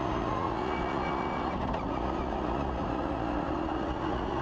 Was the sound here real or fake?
fake